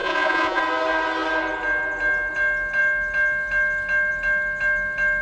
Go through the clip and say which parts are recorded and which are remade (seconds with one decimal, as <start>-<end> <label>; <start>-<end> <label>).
0.0-0.6 remade; 0.6-5.2 recorded